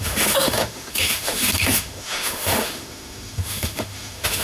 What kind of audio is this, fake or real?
fake